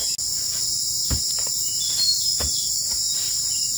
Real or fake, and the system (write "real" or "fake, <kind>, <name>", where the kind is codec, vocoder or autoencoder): real